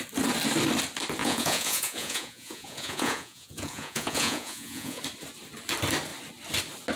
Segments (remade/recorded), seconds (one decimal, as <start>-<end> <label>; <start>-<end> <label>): 0.0-1.2 recorded; 1.2-5.0 remade; 5.0-7.0 recorded

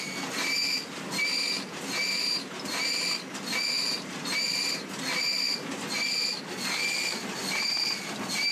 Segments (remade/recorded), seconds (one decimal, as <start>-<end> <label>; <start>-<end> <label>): 0.0-7.4 recorded; 7.4-8.0 remade; 8.0-8.5 recorded

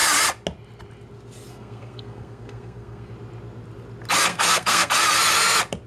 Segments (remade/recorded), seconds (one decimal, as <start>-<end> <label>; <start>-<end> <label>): 0.0-1.5 recorded; 1.5-3.1 remade; 3.1-4.3 recorded; 4.3-4.9 remade; 4.9-5.9 recorded